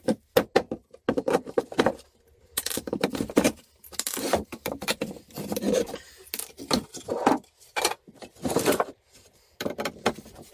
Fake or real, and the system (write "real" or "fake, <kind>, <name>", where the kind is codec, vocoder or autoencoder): real